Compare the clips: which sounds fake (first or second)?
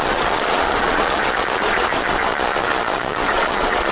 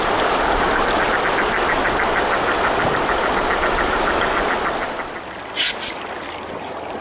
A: first